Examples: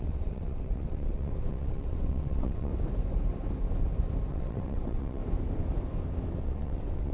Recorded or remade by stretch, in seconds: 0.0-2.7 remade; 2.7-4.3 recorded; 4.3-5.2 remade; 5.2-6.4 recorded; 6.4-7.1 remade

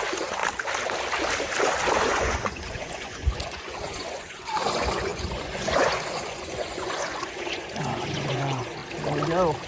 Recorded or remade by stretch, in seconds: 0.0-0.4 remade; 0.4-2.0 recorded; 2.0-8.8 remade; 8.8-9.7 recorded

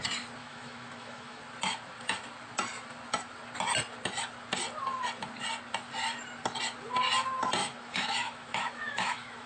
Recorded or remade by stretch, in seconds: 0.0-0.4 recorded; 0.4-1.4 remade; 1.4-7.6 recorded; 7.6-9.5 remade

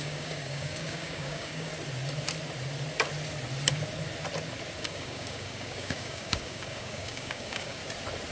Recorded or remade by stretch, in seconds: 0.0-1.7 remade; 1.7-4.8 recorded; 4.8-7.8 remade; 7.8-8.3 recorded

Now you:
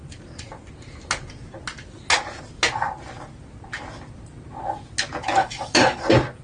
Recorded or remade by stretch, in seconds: 0.0-5.4 recorded; 5.4-6.0 remade; 6.0-6.4 recorded